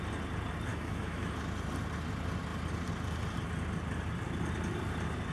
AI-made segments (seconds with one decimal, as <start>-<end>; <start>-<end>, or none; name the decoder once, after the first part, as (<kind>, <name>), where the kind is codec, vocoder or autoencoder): 0.7-1.3 (autoencoder, DAC-VAE)